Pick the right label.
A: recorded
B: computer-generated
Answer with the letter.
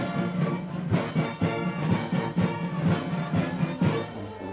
A